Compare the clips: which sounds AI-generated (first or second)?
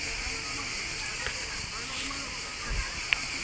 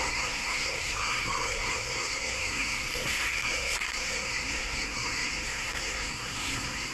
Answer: second